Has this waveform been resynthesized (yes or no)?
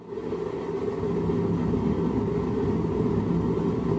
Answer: no